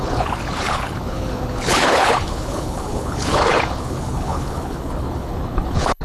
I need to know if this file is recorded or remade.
remade